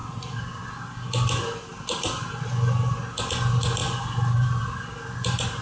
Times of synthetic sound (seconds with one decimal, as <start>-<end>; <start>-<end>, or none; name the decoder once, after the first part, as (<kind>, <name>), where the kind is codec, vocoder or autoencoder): 0.0-0.6 (vocoder, BigVGAN v2); 3.8-5.6